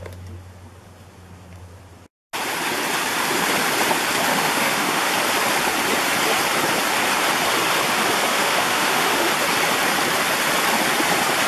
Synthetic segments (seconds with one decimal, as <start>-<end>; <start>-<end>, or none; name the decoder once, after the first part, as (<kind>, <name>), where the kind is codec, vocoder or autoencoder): 4.3-5.1 (autoencoder, DAC-VAE); 8.3-9.3